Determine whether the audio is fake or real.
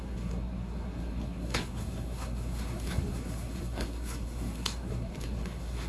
fake